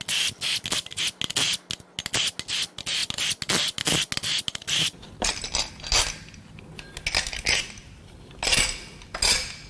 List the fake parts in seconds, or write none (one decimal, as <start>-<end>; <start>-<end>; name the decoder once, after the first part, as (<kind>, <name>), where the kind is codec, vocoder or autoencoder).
none